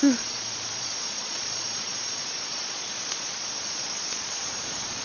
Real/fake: fake